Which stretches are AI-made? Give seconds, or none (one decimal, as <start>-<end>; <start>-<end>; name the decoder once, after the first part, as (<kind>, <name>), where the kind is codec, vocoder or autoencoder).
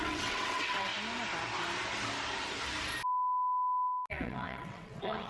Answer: 0.0-0.9 (vocoder, WaveNeXt); 4.1-5.3